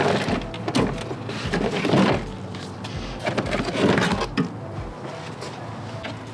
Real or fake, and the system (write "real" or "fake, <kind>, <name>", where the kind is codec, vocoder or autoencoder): real